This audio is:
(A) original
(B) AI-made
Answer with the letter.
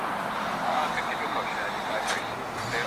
A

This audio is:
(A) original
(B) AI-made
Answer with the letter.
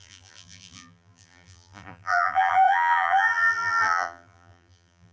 B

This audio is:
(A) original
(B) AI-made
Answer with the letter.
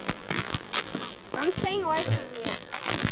B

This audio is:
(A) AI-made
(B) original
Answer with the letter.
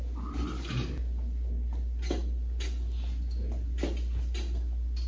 B